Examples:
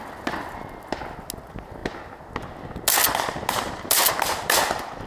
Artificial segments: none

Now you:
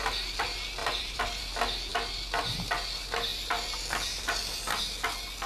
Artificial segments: 0.8-1.4 (vocoder, BigVGAN v2); 3.3-4.8